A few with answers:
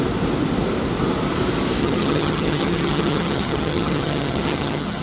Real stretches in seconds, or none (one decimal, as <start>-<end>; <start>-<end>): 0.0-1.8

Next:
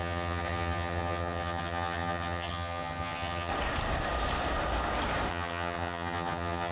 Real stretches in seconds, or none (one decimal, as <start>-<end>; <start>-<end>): 3.5-5.3

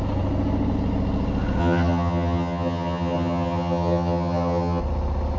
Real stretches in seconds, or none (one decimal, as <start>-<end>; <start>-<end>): 0.0-1.6; 4.8-5.4

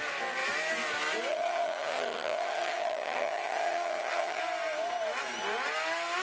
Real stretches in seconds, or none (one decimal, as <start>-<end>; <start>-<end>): 0.0-1.3; 4.4-6.2